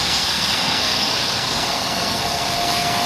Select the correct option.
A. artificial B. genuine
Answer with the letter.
A